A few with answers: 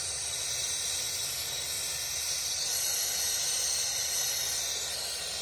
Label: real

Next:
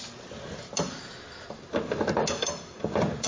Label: real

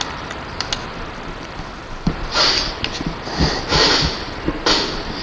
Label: real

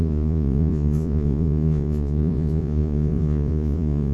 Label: fake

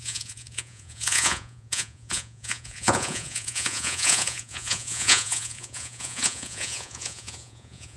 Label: fake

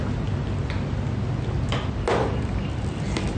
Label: real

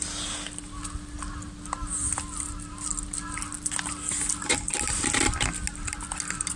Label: real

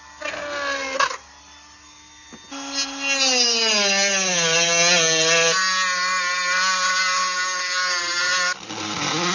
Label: real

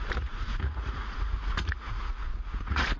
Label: fake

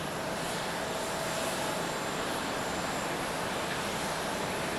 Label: real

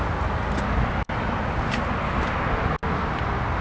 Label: real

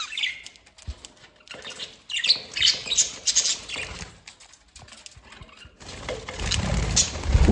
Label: real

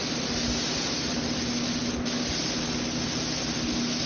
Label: real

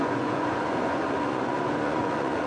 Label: fake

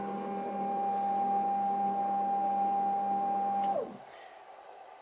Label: real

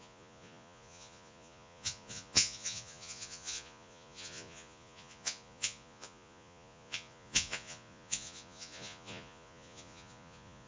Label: fake